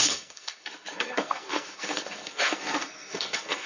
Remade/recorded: remade